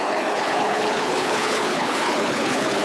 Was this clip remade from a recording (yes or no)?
yes